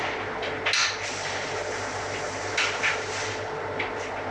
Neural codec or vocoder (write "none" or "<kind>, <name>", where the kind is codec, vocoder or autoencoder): none